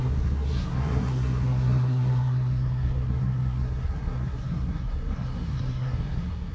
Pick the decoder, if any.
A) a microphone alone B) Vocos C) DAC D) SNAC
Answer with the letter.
D